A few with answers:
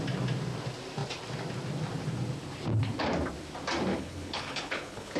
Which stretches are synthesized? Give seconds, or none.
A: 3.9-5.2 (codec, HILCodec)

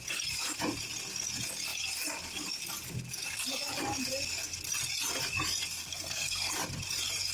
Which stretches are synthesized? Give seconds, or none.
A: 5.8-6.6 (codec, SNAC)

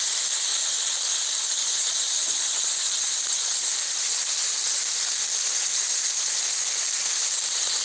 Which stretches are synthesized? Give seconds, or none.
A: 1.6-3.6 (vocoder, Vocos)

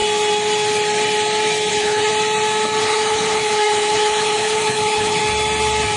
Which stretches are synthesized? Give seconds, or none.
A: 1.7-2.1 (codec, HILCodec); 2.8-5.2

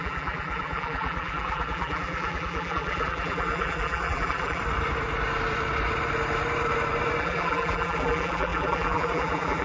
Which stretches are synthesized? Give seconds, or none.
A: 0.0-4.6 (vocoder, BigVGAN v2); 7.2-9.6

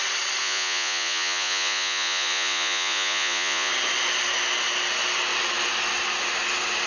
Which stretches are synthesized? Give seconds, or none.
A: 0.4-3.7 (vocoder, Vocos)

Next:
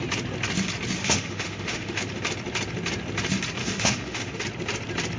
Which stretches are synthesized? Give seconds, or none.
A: 1.0-2.0 (autoencoder, DAC-VAE); 3.6-4.4

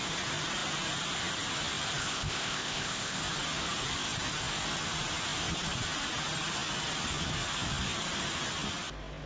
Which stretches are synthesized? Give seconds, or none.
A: 2.0-3.2 (codec, ZipCodec)